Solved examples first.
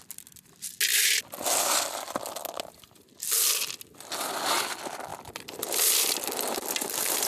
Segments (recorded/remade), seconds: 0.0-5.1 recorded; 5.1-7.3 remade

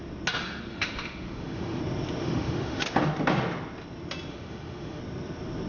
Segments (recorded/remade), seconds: 0.0-0.7 recorded; 0.7-1.8 remade; 1.8-2.2 recorded; 2.2-2.8 remade; 2.8-4.3 recorded; 4.3-5.0 remade; 5.0-5.7 recorded

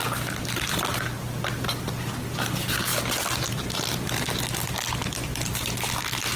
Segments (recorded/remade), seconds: 0.0-6.4 recorded